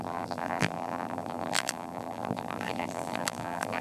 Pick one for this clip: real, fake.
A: fake